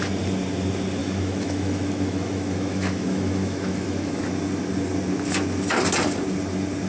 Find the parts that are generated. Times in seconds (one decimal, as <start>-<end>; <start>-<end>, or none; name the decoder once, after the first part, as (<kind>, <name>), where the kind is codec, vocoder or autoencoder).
1.0-4.2 (autoencoder, DAC-VAE)